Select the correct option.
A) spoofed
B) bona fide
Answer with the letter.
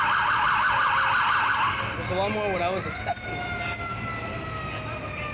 B